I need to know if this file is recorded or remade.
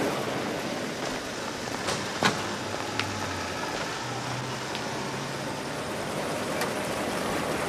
recorded